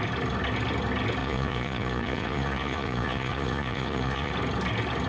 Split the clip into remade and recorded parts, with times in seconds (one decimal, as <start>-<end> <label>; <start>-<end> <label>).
0.0-1.2 recorded; 1.2-4.3 remade; 4.3-5.1 recorded